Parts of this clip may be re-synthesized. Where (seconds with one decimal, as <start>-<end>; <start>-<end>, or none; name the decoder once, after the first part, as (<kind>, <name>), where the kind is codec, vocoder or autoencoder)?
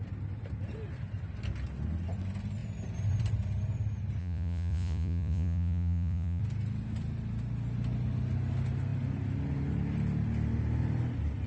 4.2-6.4 (vocoder, Vocos)